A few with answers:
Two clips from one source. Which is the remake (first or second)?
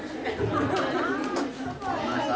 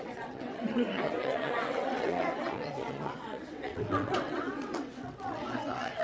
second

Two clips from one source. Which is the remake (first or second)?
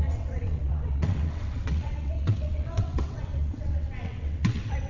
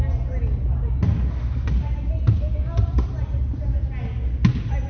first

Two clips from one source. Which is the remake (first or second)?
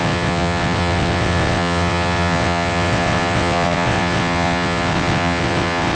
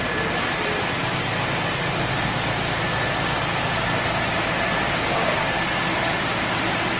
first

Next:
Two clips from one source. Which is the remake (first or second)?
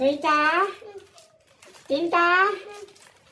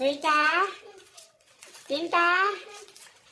second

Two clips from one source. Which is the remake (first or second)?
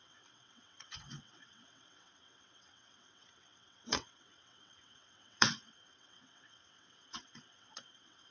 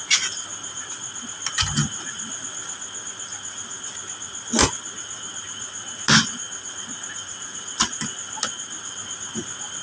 first